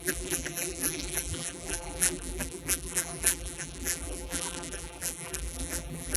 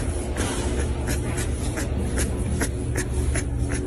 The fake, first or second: first